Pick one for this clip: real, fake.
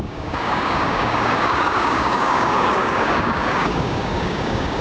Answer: fake